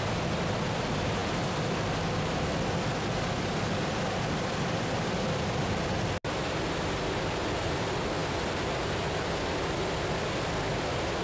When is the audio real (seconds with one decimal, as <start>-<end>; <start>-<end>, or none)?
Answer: 0.0-11.2